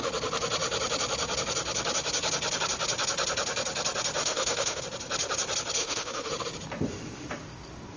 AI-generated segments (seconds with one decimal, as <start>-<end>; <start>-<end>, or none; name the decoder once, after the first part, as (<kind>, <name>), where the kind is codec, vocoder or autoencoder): 4.2-4.8 (autoencoder, DAC-VAE); 5.8-6.3